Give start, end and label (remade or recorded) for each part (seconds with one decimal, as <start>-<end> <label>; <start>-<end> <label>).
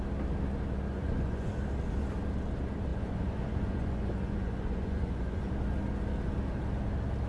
0.0-0.9 recorded; 0.9-1.5 remade; 1.5-2.9 recorded; 2.9-5.5 remade; 5.5-7.3 recorded